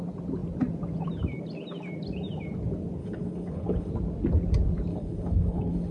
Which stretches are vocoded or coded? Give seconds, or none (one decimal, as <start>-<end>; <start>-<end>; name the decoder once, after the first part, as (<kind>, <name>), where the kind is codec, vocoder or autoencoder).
3.0-3.9 (codec, HILCodec); 4.9-5.9